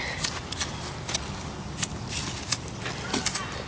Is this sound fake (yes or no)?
no